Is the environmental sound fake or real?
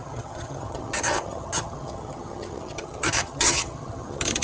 fake